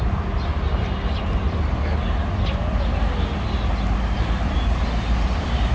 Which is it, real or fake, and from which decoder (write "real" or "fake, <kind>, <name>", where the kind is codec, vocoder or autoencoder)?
real